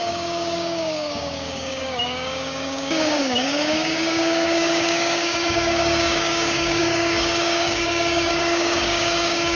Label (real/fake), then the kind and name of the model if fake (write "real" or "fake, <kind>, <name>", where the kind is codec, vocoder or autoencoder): fake, codec, DAC